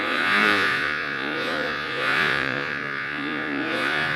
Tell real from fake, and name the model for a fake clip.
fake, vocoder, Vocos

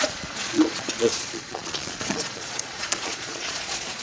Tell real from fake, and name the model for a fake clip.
fake, vocoder, Vocos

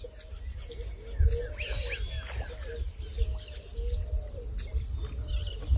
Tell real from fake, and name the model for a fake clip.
real